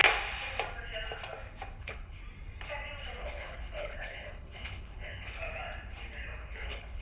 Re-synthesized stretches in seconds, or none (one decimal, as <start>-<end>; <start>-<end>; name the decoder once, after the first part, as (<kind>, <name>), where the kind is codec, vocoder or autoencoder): 1.8-2.2 (codec, HILCodec); 3.2-5.4; 6.5-7.0